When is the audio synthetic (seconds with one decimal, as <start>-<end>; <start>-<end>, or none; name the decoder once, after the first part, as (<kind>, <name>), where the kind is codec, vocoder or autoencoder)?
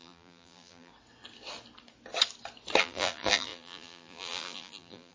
0.0-0.9 (vocoder, BigVGAN v2); 2.8-5.1